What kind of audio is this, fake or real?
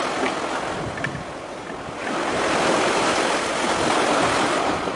real